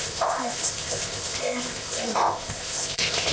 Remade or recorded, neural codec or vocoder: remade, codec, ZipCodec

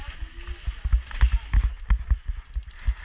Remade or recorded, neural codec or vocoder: recorded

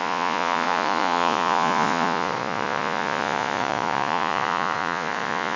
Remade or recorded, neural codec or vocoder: remade, vocoder, Vocos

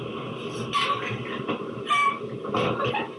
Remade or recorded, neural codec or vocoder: recorded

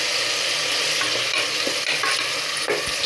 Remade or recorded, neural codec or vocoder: recorded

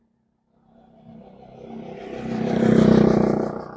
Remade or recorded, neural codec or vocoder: recorded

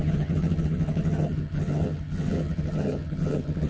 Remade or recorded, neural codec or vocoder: remade, vocoder, HiFi-GAN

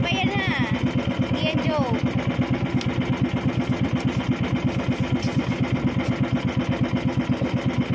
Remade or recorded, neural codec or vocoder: recorded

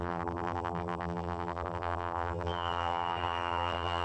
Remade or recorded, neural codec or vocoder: remade, vocoder, BigVGAN v2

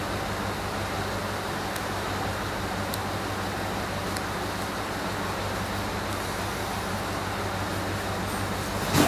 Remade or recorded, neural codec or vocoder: recorded